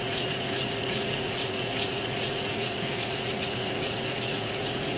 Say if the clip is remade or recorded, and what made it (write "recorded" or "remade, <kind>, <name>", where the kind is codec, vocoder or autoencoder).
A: remade, vocoder, Vocos